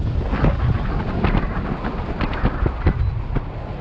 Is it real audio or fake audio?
real